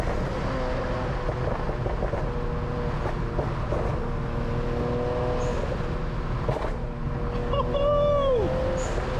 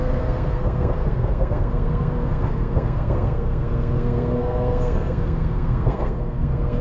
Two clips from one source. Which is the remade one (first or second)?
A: second